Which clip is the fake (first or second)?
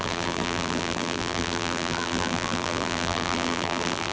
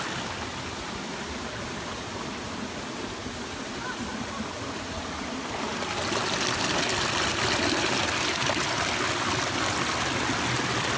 first